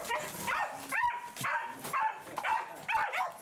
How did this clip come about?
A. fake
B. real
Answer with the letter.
B